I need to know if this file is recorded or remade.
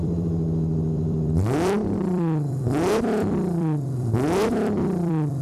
remade